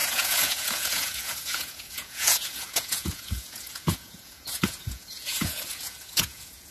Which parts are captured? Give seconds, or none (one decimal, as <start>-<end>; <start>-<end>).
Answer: none